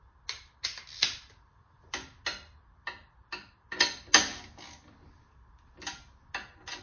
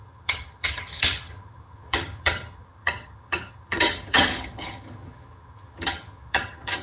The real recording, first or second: first